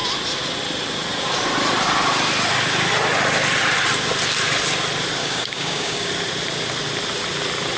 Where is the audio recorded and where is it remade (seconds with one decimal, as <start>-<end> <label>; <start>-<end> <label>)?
0.0-5.2 recorded; 5.2-6.1 remade; 6.1-7.8 recorded